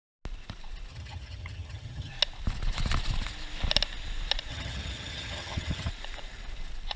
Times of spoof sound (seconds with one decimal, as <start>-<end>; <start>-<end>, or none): 0.9-2.1; 4.5-5.9